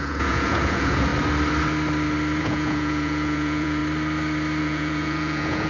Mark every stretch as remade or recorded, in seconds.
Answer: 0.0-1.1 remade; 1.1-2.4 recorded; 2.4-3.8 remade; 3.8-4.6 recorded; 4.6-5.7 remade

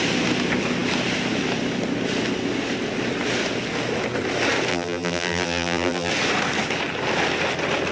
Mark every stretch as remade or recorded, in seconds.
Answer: 0.0-4.7 recorded; 4.7-6.1 remade; 6.1-7.9 recorded

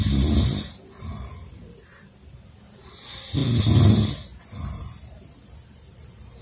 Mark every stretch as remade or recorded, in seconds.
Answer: 0.0-6.4 recorded

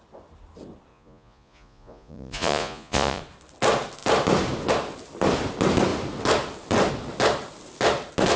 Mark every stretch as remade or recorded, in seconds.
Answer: 0.0-0.9 recorded; 0.9-3.2 remade; 3.2-8.4 recorded

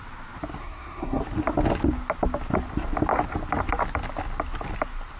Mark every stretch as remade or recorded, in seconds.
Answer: 0.0-0.6 recorded; 0.6-1.2 remade; 1.2-5.2 recorded

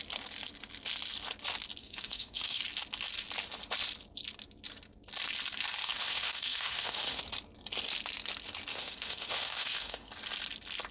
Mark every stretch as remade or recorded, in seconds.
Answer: 0.0-1.8 recorded; 1.8-2.6 remade; 2.6-5.8 recorded; 5.8-7.2 remade; 7.2-8.7 recorded; 8.7-10.1 remade; 10.1-10.9 recorded